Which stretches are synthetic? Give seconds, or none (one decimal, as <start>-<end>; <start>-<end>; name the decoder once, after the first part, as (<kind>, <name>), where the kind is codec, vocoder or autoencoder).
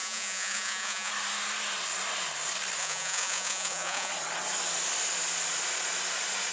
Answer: 0.0-1.1 (vocoder, Vocos); 2.8-4.1